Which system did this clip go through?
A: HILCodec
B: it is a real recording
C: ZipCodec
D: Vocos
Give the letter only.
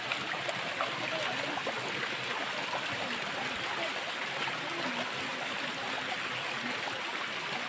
B